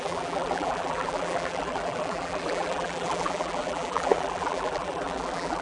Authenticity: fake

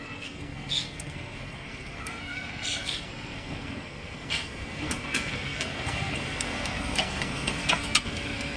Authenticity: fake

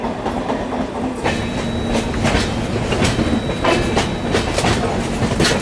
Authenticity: real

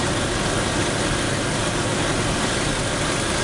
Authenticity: real